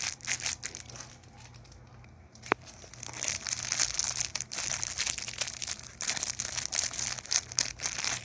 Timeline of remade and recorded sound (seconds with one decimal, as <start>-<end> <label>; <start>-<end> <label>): 0.0-4.5 recorded; 4.5-5.4 remade; 5.4-8.2 recorded